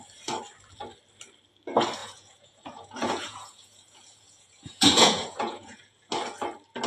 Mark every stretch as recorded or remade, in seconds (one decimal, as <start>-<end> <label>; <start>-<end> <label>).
0.0-2.0 recorded; 2.0-6.1 remade; 6.1-6.9 recorded